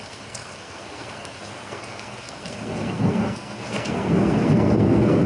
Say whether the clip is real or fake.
fake